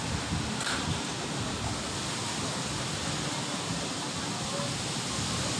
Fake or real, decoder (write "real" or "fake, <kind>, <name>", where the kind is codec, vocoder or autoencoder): real